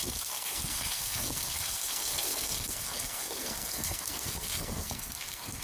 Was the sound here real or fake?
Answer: fake